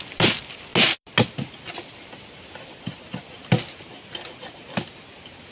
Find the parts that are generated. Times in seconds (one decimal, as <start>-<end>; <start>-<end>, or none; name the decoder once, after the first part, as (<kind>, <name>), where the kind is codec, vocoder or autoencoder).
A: none